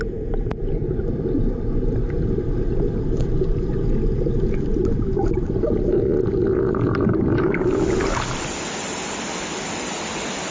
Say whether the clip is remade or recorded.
recorded